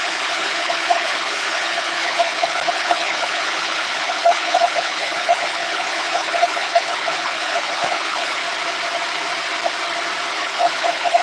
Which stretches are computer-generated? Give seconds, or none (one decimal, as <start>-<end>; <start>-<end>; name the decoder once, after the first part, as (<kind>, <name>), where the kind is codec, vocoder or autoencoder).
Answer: 0.0-8.4 (codec, HILCodec); 10.3-11.2